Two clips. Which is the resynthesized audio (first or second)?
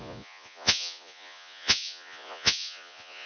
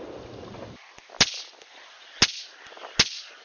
first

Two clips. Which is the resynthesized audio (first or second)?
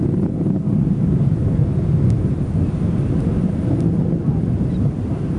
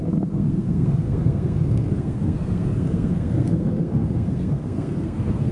second